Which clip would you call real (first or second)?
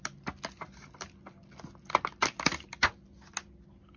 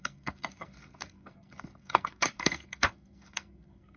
first